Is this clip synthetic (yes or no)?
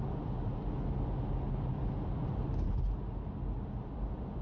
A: no